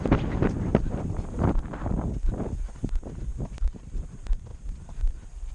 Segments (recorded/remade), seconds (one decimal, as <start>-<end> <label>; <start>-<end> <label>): 0.0-5.5 recorded